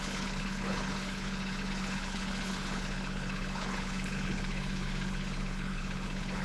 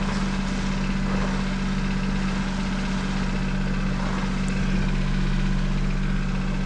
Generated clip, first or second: first